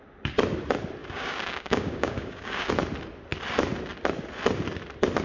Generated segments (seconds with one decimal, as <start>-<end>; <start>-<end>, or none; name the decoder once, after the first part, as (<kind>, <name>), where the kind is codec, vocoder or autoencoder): 1.0-2.7 (codec, DAC)